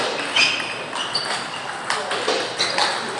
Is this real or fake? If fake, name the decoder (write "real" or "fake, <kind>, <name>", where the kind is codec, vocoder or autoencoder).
real